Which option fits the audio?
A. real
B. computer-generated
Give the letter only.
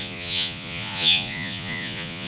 B